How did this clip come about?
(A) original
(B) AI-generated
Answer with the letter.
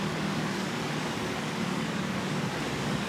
B